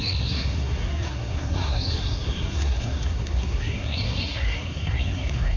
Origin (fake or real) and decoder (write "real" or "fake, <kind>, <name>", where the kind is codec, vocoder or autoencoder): fake, codec, SNAC